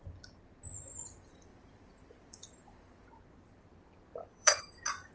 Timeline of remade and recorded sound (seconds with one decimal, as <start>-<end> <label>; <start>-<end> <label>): 0.0-1.5 recorded; 1.5-4.6 remade; 4.6-5.1 recorded